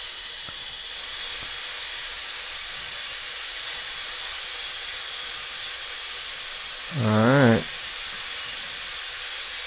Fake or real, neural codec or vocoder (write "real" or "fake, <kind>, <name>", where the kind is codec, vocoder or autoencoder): real